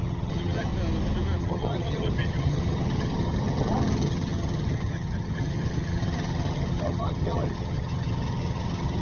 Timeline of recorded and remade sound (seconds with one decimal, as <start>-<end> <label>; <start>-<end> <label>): 0.0-0.7 remade; 0.7-1.4 recorded; 1.4-9.0 remade